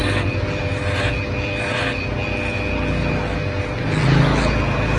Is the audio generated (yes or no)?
no